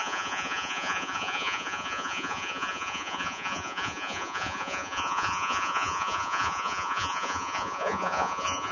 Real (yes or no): no